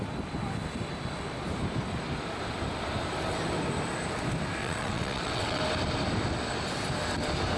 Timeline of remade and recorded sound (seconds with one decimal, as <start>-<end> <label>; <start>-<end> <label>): 0.0-4.6 recorded; 4.6-5.6 remade; 5.6-7.6 recorded